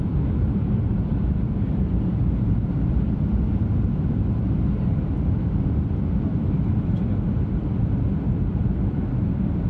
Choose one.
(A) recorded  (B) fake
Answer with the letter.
B